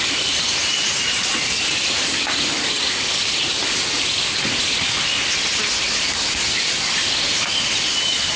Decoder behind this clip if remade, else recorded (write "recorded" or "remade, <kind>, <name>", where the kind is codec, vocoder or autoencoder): recorded